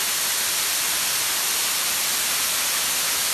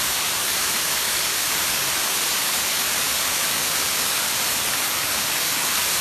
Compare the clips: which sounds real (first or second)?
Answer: first